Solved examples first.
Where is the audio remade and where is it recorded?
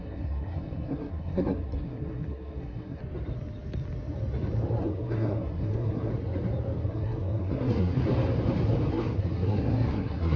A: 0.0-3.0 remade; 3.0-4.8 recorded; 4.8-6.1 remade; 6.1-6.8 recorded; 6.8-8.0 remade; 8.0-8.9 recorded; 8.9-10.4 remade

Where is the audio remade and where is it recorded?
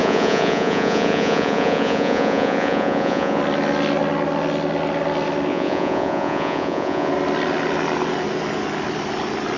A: 0.0-3.4 remade; 3.4-5.5 recorded; 5.5-7.1 remade; 7.1-9.6 recorded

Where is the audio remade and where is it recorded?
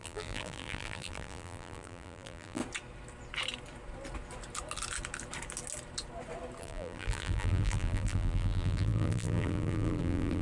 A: 0.0-2.6 remade; 2.6-6.6 recorded; 6.6-10.4 remade